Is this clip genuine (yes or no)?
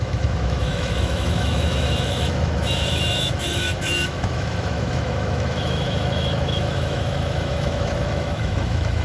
no